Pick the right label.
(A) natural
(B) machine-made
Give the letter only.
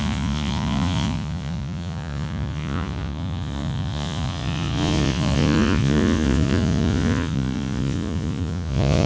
B